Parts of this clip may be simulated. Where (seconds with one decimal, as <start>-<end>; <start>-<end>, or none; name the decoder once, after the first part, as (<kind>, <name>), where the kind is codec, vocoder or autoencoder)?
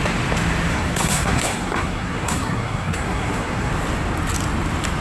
0.7-3.7 (codec, SNAC)